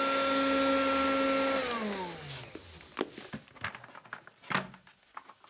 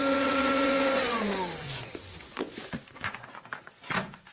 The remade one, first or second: second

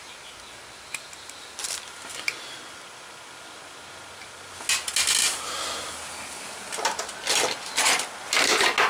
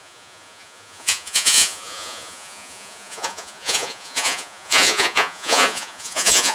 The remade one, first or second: second